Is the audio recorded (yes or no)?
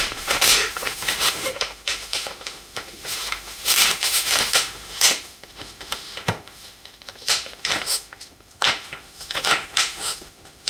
no